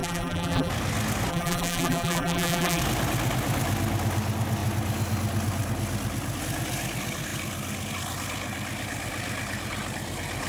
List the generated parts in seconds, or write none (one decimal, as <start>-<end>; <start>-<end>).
0.0-0.7; 1.3-2.8